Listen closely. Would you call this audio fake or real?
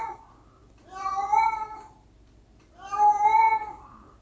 fake